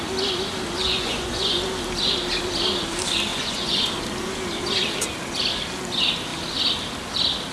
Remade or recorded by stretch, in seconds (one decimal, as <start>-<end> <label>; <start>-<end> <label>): 0.0-0.8 recorded; 0.8-1.6 remade; 1.6-3.3 recorded; 3.3-3.9 remade; 3.9-7.5 recorded